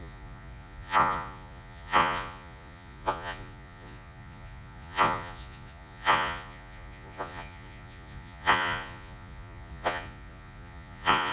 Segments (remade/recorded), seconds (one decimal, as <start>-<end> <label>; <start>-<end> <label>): 0.0-11.3 remade